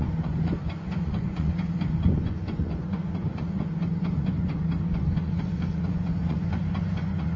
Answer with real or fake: fake